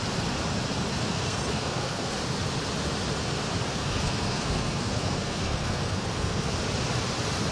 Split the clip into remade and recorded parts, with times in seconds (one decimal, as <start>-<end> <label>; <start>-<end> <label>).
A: 0.0-0.9 recorded; 0.9-2.2 remade; 2.2-3.7 recorded; 3.7-6.5 remade; 6.5-7.5 recorded